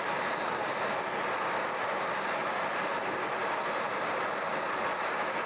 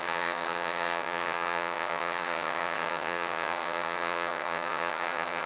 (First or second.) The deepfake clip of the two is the second